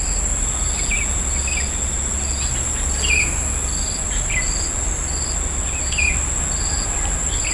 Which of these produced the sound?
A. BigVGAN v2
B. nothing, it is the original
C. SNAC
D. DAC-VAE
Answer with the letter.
B